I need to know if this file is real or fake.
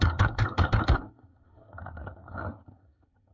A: fake